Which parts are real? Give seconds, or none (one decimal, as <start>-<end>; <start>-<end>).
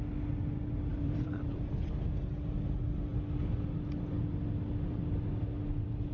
0.0-0.9; 1.6-6.1